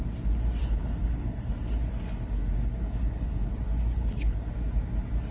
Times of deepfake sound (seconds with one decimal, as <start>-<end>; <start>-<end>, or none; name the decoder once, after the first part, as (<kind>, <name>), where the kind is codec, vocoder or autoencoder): 0.6-1.5 (codec, HILCodec); 2.6-3.5; 3.9-4.5